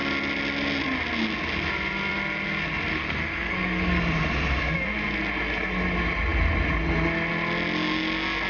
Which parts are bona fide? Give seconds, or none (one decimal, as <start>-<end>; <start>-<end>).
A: 0.0-2.9; 4.0-8.5